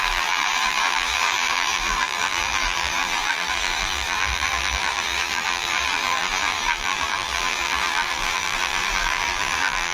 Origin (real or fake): fake